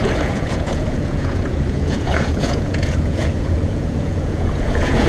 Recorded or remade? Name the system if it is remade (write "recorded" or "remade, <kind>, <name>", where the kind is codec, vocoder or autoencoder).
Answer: remade, vocoder, Vocos